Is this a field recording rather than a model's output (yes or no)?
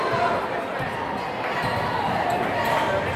yes